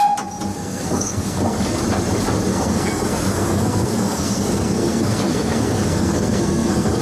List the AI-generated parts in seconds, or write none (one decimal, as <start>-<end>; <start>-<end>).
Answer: 0.5-1.8; 2.5-7.0